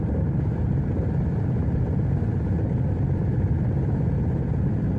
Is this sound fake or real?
real